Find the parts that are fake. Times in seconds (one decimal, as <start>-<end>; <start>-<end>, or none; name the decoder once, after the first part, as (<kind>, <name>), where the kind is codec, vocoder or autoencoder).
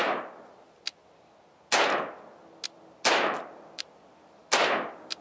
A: 3.1-4.4 (vocoder, BigVGAN v2)